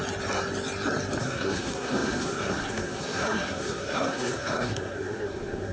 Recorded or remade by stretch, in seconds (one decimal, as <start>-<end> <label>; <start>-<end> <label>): 0.0-1.2 recorded; 1.2-5.7 remade